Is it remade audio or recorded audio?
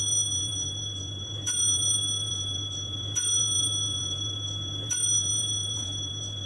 remade